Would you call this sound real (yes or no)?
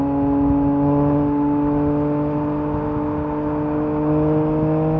yes